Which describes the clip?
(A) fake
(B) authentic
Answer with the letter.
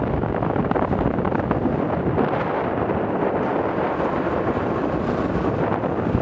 B